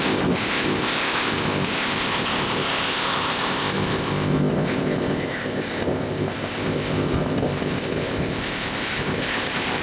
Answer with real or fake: fake